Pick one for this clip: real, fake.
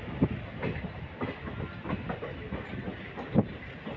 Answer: real